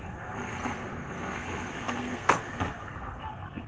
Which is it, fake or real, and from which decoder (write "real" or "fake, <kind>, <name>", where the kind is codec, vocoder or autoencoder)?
fake, codec, SNAC